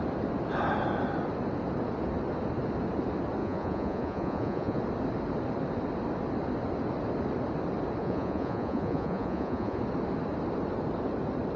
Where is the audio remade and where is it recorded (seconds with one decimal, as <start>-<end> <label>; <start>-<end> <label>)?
0.0-3.4 recorded; 3.4-4.8 remade; 4.8-8.0 recorded; 8.0-9.8 remade; 9.8-11.6 recorded